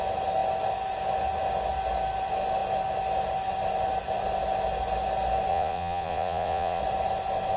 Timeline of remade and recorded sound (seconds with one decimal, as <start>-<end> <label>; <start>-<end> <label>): 0.0-5.5 recorded; 5.5-6.8 remade; 6.8-7.6 recorded